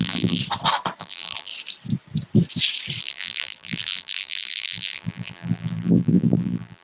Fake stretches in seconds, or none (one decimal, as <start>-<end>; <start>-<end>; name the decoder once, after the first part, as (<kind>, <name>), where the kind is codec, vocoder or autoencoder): 0.0-0.4 (vocoder, BigVGAN v2); 1.0-1.5; 3.0-6.8